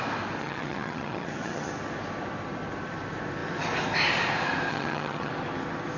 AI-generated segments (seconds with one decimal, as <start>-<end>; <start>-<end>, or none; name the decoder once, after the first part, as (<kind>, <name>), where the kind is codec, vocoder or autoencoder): 0.4-1.7 (vocoder, HiFi-GAN); 4.7-5.3